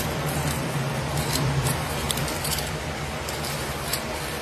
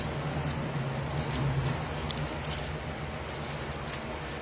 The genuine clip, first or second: second